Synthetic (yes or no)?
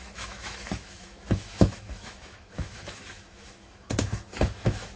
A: yes